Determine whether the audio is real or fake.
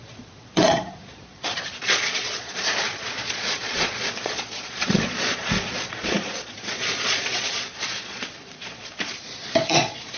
fake